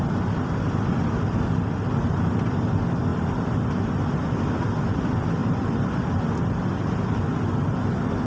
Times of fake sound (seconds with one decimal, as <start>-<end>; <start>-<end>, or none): 5.4-6.2